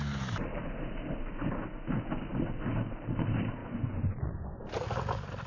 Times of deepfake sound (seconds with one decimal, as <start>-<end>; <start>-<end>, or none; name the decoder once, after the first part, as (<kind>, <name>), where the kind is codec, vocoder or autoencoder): 3.6-4.6 (vocoder, Vocos)